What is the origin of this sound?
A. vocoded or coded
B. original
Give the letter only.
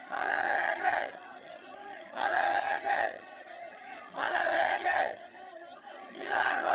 A